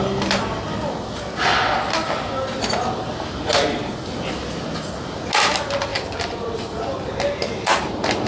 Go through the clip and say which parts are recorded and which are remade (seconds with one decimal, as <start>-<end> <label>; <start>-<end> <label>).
0.0-5.9 recorded; 5.9-7.1 remade; 7.1-8.3 recorded